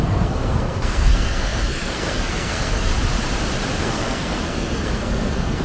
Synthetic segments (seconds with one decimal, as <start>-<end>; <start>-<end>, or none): 0.0-2.9; 3.8-5.6